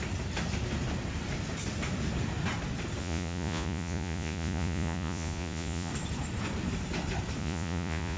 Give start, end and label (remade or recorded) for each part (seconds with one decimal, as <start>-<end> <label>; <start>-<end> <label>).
0.0-3.0 recorded; 3.0-5.9 remade; 5.9-7.4 recorded; 7.4-8.2 remade